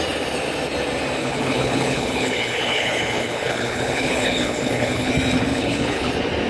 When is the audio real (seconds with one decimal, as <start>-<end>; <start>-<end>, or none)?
0.0-1.2; 5.1-5.5; 6.1-6.5